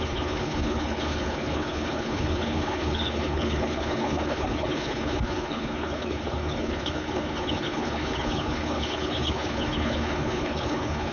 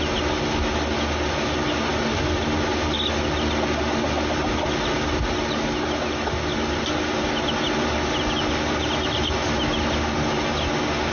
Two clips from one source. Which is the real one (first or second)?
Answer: second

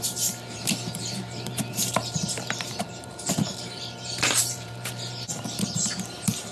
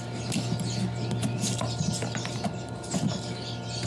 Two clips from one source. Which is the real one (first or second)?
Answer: second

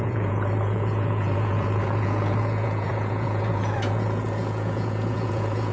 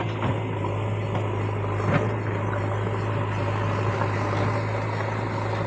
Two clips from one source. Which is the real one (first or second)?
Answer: second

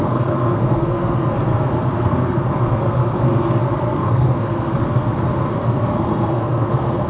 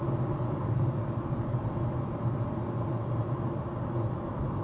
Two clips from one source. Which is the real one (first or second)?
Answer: second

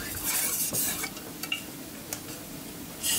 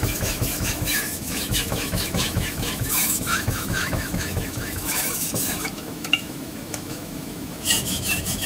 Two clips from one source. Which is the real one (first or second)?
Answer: first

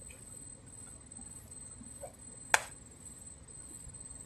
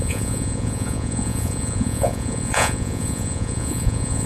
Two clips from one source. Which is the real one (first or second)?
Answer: first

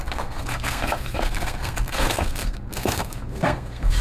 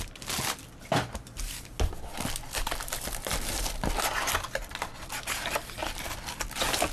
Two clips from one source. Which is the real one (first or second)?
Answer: second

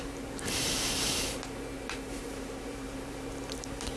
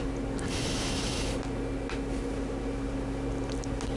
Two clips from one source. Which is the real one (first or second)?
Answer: second